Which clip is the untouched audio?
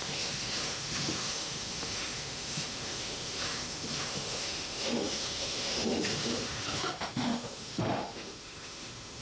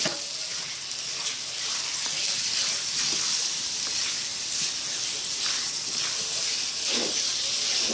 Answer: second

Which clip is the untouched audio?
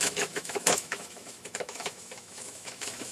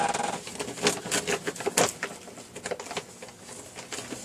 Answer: second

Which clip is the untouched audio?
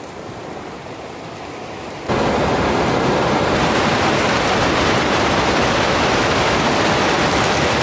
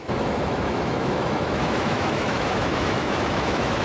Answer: first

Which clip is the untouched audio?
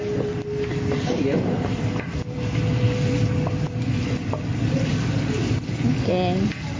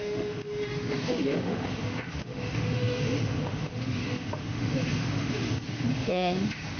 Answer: first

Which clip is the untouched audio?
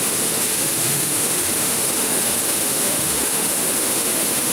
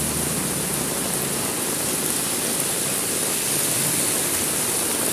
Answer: second